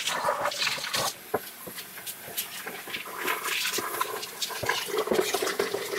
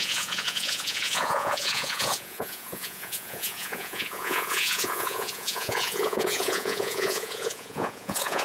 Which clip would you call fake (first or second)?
second